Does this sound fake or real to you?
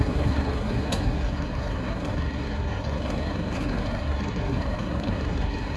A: fake